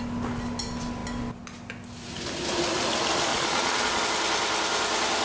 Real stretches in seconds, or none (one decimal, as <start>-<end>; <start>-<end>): 0.0-3.3; 4.0-5.2